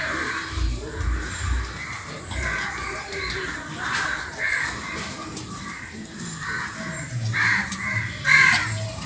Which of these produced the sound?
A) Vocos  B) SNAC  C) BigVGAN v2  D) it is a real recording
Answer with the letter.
C